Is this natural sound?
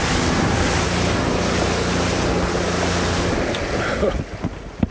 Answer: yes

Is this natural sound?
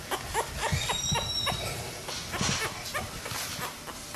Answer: yes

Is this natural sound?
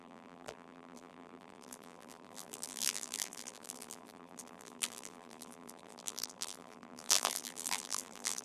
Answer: no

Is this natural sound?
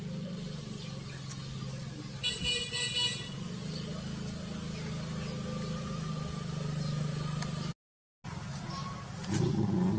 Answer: yes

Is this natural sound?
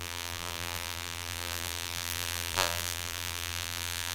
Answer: no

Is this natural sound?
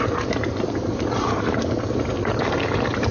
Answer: yes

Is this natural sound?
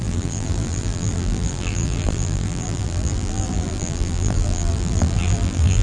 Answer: no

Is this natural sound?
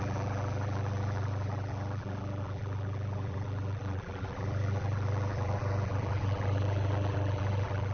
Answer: no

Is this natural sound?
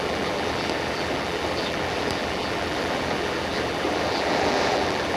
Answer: no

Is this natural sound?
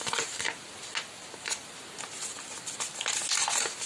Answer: yes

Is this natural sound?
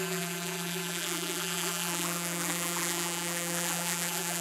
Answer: no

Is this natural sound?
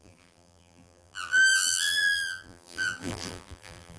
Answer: no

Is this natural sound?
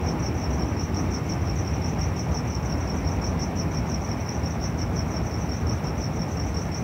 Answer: yes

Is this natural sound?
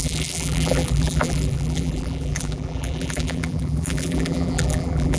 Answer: no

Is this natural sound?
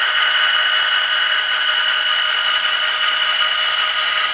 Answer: yes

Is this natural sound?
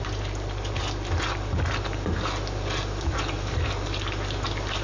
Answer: yes